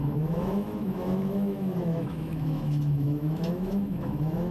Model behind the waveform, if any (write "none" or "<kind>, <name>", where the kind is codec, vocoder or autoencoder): autoencoder, DAC-VAE